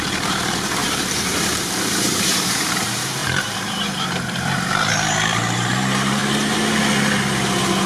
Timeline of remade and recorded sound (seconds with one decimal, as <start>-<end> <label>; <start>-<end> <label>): 0.0-6.2 remade; 6.2-7.9 recorded